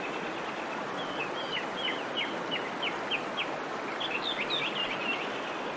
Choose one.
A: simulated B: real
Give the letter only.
B